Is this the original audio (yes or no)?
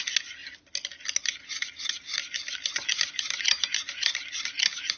yes